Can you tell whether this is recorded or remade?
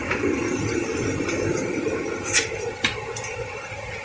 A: recorded